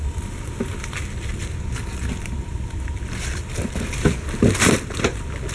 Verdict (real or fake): real